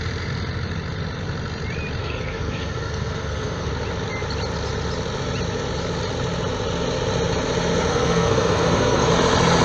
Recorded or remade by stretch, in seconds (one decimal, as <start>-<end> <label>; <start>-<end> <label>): 0.0-2.0 recorded; 2.0-3.7 remade; 3.7-7.9 recorded; 7.9-9.1 remade; 9.1-9.6 recorded